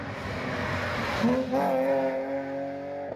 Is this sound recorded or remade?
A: recorded